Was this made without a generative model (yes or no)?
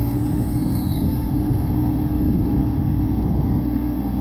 no